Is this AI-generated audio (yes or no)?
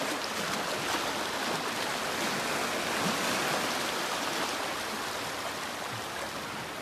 no